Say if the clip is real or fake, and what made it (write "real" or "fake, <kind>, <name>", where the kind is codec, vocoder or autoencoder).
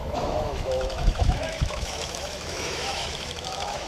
fake, autoencoder, DAC-VAE